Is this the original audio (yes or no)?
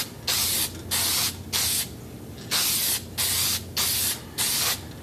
yes